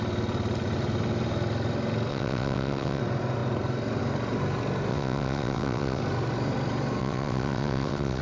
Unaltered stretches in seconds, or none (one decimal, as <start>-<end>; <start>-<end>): 0.0-2.1; 3.0-4.9; 6.0-7.0